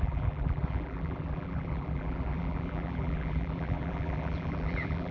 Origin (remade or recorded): remade